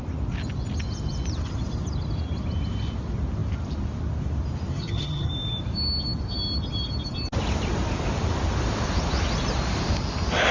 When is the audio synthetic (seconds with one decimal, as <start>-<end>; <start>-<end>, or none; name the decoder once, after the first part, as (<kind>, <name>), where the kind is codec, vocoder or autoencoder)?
4.7-5.3 (vocoder, HiFi-GAN)